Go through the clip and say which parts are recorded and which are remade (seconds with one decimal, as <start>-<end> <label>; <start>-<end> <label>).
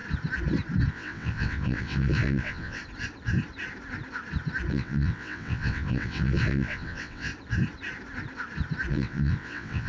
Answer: 0.0-0.9 recorded; 0.9-2.8 remade; 2.8-4.7 recorded; 4.7-7.3 remade; 7.3-8.9 recorded; 8.9-9.9 remade